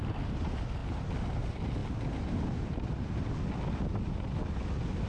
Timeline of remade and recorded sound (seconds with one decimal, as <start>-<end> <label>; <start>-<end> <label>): 0.0-5.1 recorded